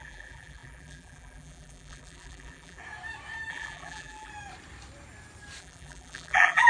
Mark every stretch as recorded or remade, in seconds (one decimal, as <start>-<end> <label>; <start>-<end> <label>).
0.0-2.8 remade; 2.8-3.5 recorded; 3.5-4.3 remade; 4.3-5.6 recorded; 5.6-6.7 remade